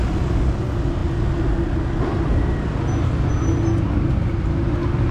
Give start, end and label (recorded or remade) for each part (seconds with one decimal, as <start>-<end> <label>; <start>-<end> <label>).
0.0-5.1 recorded